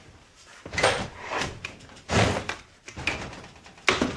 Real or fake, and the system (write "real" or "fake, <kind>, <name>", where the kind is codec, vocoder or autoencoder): fake, vocoder, BigVGAN v2